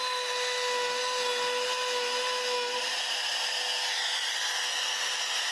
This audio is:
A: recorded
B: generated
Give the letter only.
A